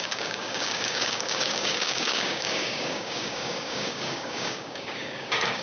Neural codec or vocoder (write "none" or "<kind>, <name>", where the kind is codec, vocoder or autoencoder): codec, DAC